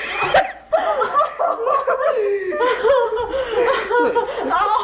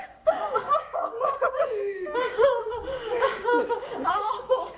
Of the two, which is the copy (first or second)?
second